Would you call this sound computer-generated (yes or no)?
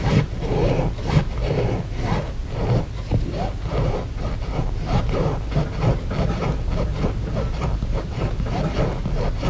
no